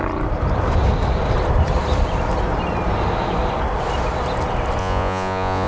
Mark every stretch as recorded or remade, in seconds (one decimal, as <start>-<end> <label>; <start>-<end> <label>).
0.0-4.8 recorded; 4.8-5.7 remade